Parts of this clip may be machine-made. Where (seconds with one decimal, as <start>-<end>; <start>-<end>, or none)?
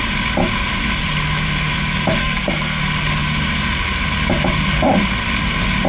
2.2-2.8